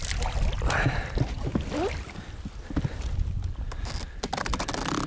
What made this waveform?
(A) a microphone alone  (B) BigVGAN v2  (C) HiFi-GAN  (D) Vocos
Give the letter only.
A